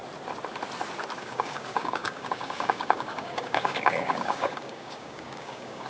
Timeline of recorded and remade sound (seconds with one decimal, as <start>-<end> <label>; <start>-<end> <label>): 0.0-1.2 recorded; 1.2-5.9 remade